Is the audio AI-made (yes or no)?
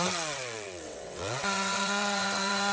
yes